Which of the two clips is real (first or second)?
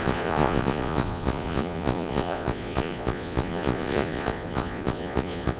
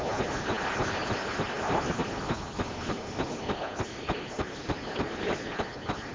second